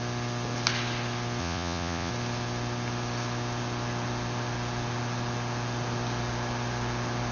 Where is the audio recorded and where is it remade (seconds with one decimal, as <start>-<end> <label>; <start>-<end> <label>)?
0.0-1.4 recorded; 1.4-2.1 remade; 2.1-7.3 recorded